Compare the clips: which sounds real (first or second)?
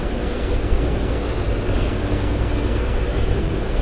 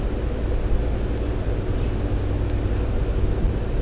second